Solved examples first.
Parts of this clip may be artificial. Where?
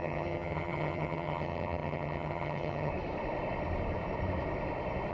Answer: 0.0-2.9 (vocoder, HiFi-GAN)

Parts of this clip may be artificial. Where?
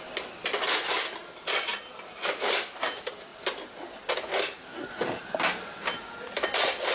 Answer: none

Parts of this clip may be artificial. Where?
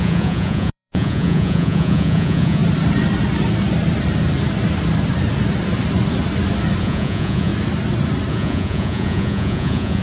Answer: 0.0-2.6 (vocoder, Vocos); 6.8-7.5; 8.3-10.0